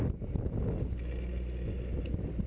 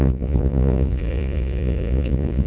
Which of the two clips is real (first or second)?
first